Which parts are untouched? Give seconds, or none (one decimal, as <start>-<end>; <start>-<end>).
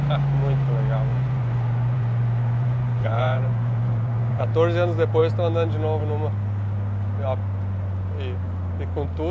0.0-1.1; 4.4-9.3